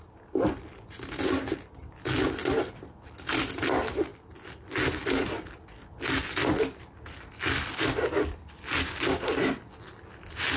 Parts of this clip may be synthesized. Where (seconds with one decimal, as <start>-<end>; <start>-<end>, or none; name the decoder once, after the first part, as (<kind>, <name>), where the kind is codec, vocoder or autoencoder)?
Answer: none